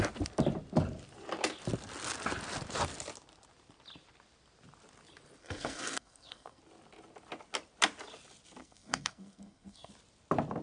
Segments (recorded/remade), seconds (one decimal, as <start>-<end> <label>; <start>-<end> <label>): 0.0-5.4 recorded; 5.4-6.6 remade; 6.6-8.6 recorded; 8.6-9.9 remade; 9.9-10.6 recorded